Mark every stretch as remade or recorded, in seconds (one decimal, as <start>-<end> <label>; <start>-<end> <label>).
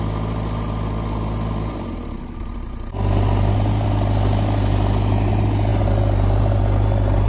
0.0-7.3 recorded